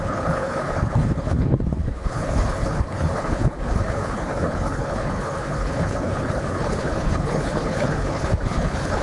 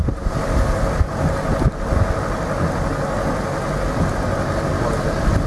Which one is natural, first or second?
second